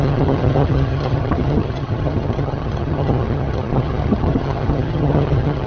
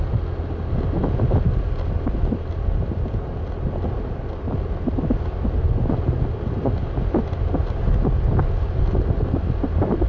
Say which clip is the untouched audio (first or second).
second